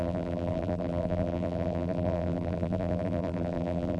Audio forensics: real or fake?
fake